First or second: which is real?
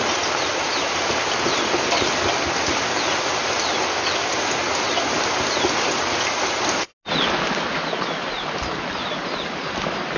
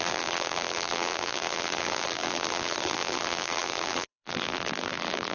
first